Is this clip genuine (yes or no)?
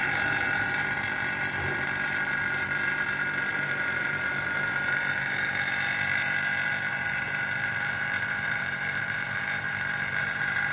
no